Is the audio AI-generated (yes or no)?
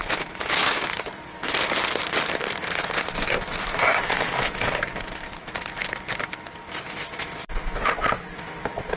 no